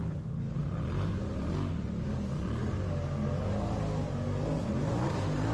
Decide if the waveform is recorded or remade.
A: recorded